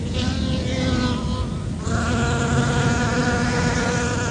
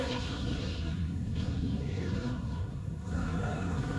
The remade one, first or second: second